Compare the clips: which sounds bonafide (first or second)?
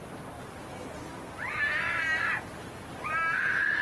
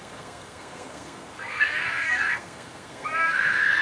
first